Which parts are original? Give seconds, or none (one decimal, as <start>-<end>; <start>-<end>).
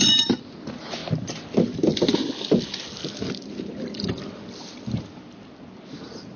0.0-6.4